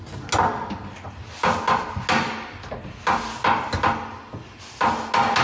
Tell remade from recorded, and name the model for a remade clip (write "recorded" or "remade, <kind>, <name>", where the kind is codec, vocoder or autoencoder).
recorded